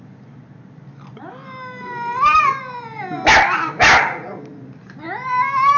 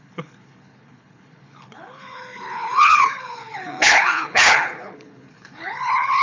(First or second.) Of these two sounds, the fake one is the second